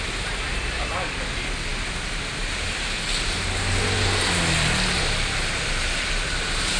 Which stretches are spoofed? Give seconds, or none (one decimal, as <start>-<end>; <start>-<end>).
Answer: none